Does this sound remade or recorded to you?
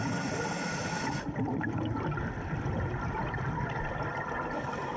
remade